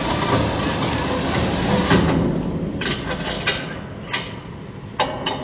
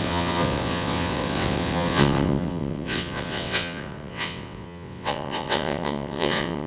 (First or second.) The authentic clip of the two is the first